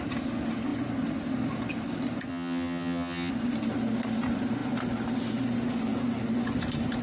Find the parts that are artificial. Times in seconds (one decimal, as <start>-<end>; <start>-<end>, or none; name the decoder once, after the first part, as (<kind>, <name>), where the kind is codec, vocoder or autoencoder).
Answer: 2.3-3.3 (vocoder, HiFi-GAN)